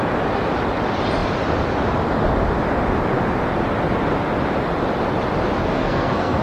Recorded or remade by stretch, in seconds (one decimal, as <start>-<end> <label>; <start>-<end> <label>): 0.0-5.6 recorded; 5.6-6.4 remade